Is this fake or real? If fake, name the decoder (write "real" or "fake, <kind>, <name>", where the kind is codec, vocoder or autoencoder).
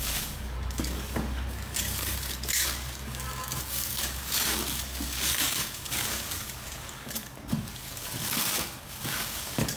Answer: fake, codec, DAC